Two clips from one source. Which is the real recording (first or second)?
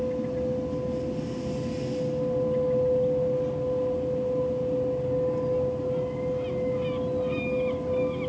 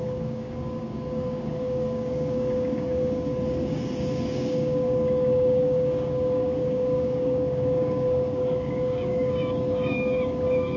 first